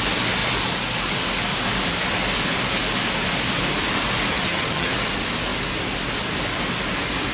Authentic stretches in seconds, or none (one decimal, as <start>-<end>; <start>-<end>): 0.0-4.3; 4.9-7.3